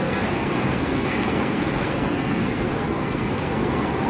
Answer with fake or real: fake